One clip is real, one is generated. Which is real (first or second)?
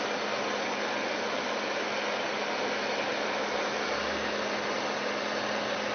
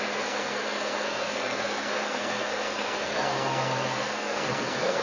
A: first